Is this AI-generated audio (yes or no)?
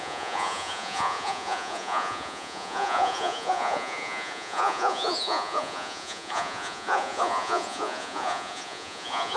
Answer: yes